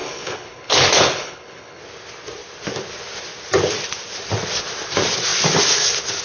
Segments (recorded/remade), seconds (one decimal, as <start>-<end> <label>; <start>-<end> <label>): 0.0-1.8 remade; 1.8-6.2 recorded